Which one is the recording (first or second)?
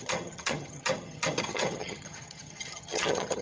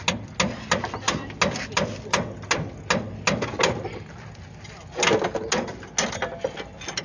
second